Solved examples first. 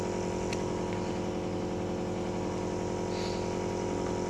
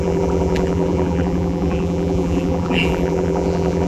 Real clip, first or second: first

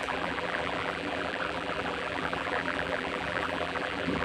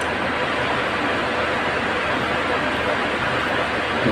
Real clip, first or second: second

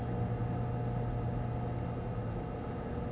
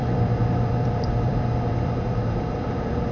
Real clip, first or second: first